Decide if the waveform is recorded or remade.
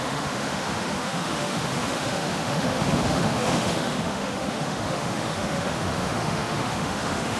remade